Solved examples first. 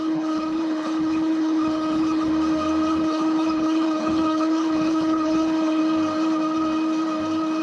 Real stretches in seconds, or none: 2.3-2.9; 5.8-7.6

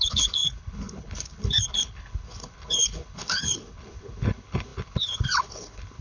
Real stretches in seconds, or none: none

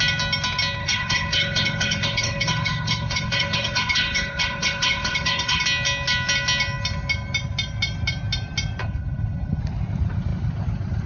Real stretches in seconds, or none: 0.0-0.8; 5.6-8.8; 9.6-11.1

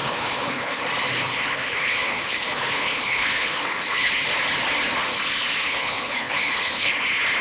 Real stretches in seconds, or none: 0.8-1.3; 4.1-5.6; 6.9-7.4

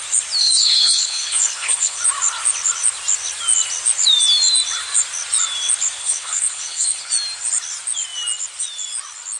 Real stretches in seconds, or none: 0.0-0.4; 2.0-6.0; 7.1-9.4

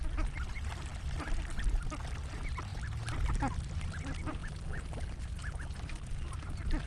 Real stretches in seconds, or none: 0.0-6.9

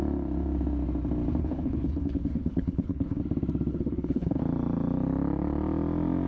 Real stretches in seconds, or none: 0.0-1.4; 3.2-3.7; 4.4-6.3

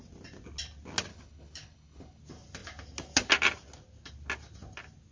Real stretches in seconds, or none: 0.0-1.1; 2.2-5.1